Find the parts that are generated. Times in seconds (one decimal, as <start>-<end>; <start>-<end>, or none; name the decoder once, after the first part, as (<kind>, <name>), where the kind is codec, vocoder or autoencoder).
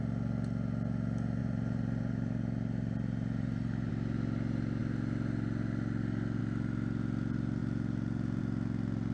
1.4-3.9 (vocoder, BigVGAN v2)